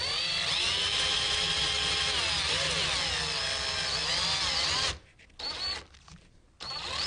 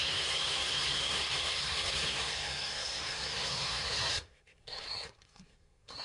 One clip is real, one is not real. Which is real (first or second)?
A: first